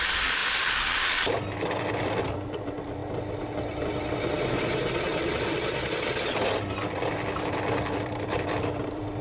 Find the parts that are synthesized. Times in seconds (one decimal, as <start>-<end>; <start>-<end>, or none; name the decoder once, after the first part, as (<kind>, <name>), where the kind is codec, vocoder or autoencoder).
0.0-3.0 (vocoder, BigVGAN v2); 5.9-9.2